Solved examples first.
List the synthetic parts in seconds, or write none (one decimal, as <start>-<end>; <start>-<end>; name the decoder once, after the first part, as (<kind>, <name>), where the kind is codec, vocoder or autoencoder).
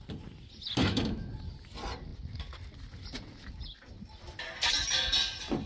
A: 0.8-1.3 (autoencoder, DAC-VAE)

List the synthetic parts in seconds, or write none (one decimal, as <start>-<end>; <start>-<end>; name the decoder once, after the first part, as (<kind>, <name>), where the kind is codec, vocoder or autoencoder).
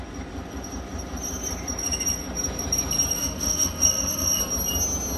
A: 3.2-4.4 (autoencoder, DAC-VAE)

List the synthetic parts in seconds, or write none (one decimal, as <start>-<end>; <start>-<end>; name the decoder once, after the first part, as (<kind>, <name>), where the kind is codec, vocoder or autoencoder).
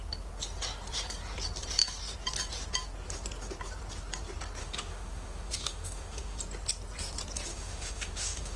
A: 4.6-6.4 (autoencoder, DAC-VAE); 7.5-8.6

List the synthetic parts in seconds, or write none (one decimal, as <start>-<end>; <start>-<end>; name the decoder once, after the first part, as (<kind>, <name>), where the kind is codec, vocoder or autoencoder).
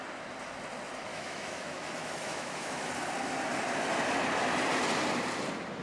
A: 1.1-2.9 (autoencoder, DAC-VAE)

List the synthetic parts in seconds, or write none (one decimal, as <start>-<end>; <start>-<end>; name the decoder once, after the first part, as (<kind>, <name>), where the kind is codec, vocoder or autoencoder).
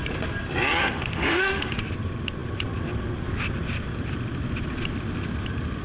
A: 0.8-1.7 (autoencoder, DAC-VAE)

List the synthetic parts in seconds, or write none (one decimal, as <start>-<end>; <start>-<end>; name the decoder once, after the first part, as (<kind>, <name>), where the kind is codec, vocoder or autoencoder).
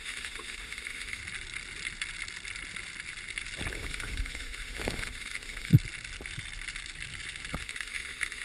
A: 0.0-1.2 (autoencoder, DAC-VAE); 3.7-5.7; 7.6-8.4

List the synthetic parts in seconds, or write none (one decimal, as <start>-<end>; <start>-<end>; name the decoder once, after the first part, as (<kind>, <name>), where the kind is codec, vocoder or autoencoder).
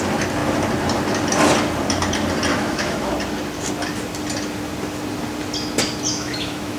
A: 2.5-3.1 (autoencoder, DAC-VAE); 6.1-6.8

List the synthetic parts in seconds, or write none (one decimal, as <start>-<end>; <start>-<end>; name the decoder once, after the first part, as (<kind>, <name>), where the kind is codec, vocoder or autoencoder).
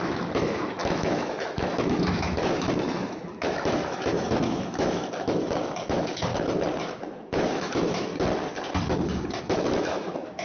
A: 0.0-6.3 (autoencoder, DAC-VAE); 6.8-8.1; 9.4-10.4